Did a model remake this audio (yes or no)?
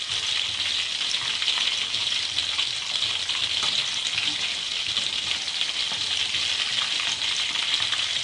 no